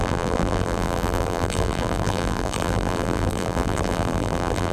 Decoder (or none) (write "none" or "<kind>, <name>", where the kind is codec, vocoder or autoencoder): vocoder, BigVGAN v2